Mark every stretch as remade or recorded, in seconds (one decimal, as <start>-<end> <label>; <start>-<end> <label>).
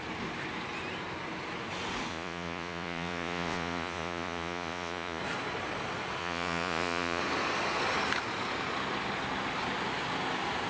0.0-2.1 recorded; 2.1-5.2 remade; 5.2-6.2 recorded; 6.2-7.2 remade; 7.2-10.7 recorded